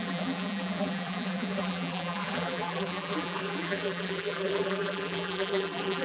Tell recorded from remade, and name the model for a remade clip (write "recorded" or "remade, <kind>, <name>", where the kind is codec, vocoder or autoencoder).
remade, vocoder, BigVGAN v2